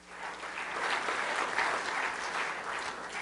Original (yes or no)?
yes